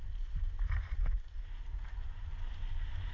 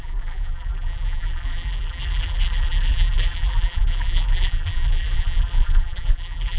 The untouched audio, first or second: first